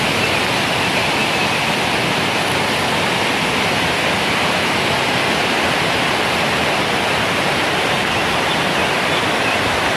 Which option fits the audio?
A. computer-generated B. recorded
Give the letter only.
B